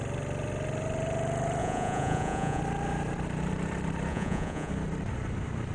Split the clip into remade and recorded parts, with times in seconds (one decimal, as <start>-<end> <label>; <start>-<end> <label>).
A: 0.0-1.6 recorded; 1.6-2.6 remade; 2.6-4.1 recorded; 4.1-4.7 remade; 4.7-5.7 recorded